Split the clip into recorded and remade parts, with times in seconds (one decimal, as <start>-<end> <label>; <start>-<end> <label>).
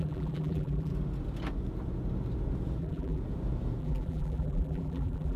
0.0-0.9 remade; 0.9-2.8 recorded; 2.8-3.2 remade; 3.2-3.8 recorded; 3.8-5.4 remade